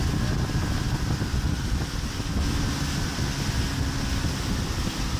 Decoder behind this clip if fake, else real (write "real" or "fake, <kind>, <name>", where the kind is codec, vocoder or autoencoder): real